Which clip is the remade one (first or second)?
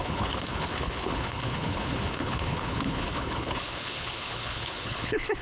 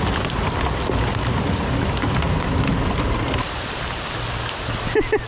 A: first